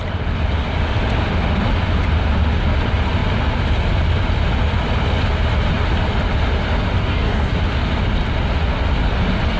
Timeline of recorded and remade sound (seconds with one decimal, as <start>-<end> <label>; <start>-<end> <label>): 0.0-7.0 recorded; 7.0-7.5 remade; 7.5-9.6 recorded